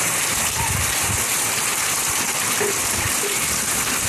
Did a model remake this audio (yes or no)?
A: yes